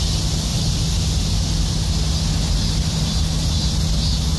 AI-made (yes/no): no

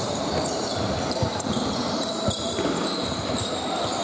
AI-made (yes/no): yes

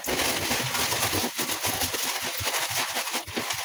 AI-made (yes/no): no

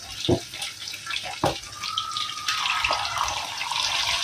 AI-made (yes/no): yes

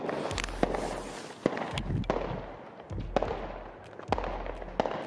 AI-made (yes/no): no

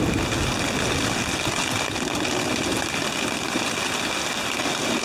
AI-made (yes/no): no